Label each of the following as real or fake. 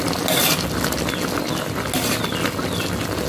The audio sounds real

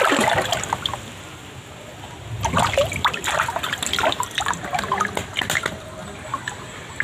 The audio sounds real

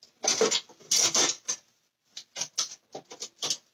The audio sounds real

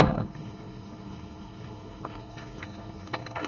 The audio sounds fake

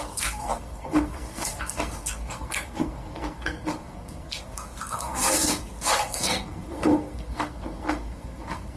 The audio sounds fake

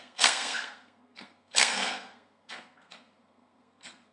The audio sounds fake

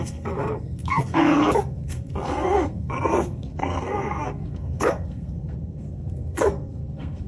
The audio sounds fake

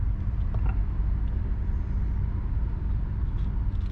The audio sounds real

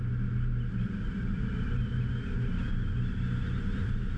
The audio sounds real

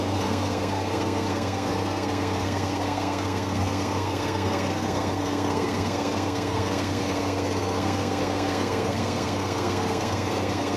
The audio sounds fake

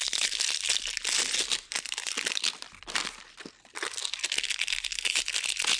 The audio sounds real